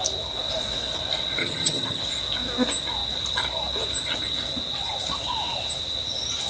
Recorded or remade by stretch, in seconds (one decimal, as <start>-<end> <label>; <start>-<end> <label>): 0.0-1.4 recorded; 1.4-2.0 remade; 2.0-6.5 recorded